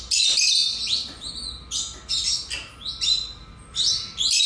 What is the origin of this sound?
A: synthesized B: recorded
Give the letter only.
B